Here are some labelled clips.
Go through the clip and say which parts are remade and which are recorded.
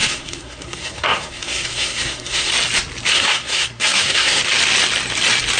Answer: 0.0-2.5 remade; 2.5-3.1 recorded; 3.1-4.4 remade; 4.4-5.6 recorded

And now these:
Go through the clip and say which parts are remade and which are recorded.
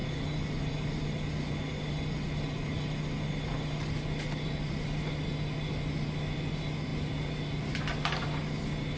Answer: 0.0-9.0 recorded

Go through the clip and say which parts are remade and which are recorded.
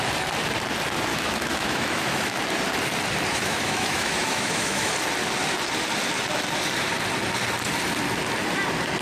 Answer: 0.0-1.1 recorded; 1.1-2.4 remade; 2.4-3.3 recorded; 3.3-4.9 remade; 4.9-9.0 recorded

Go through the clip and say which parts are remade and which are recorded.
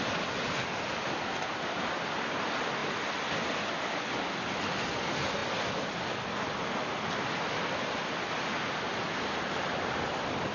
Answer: 0.0-10.5 recorded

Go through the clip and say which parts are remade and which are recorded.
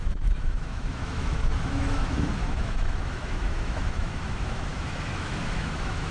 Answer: 0.0-6.1 remade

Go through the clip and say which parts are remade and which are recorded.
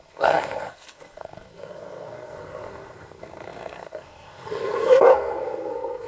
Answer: 0.0-6.1 remade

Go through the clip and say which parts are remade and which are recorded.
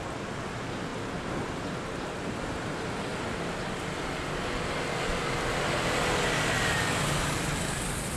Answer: 0.0-8.2 recorded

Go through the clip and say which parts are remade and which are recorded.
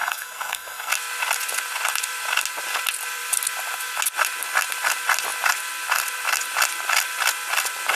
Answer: 0.0-0.9 remade; 0.9-8.0 recorded